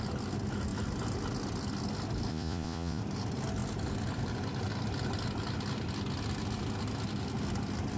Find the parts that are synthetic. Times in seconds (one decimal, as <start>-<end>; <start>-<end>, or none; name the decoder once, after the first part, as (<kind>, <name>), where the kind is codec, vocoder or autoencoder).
2.3-3.0 (vocoder, Vocos)